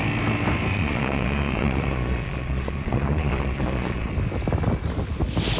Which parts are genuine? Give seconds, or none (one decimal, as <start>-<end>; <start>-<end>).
0.0-0.7; 4.1-5.6